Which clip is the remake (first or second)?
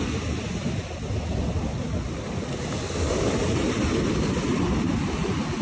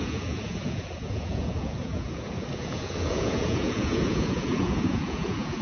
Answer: second